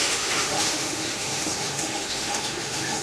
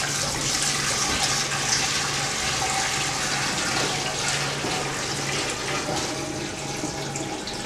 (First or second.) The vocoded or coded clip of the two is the first